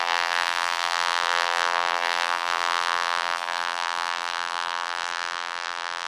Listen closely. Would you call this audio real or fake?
fake